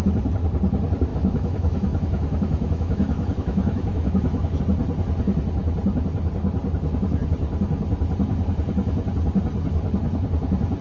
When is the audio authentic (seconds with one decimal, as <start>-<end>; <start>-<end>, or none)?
0.0-1.1; 4.6-10.8